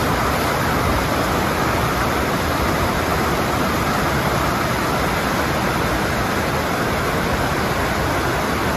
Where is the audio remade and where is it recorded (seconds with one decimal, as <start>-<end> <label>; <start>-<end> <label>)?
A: 0.0-8.8 recorded